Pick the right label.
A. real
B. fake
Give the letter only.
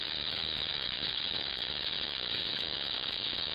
B